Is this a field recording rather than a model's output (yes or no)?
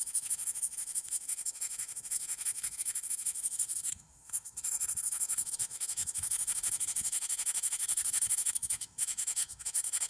no